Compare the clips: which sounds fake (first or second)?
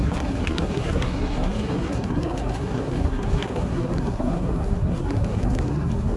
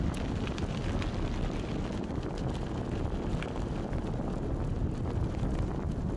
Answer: first